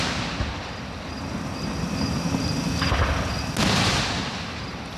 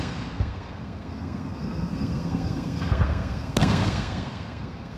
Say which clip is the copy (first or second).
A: second